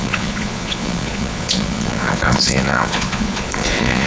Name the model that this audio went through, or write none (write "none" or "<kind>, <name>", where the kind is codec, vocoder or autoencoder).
vocoder, Vocos